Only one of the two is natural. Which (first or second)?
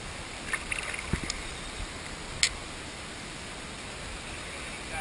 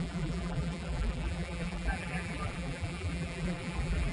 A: first